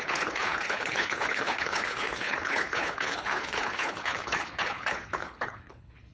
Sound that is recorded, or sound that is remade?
remade